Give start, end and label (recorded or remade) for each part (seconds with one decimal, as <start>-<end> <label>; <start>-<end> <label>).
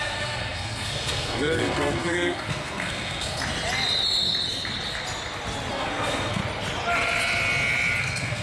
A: 0.0-3.4 remade; 3.4-5.7 recorded; 5.7-6.4 remade; 6.4-8.0 recorded; 8.0-8.4 remade